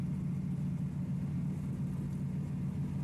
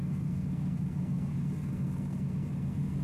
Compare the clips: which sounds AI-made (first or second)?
second